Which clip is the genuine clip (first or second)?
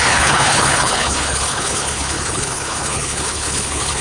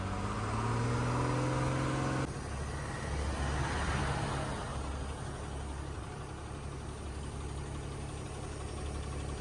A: second